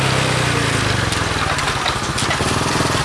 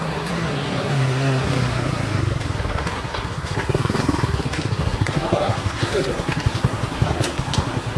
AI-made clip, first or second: second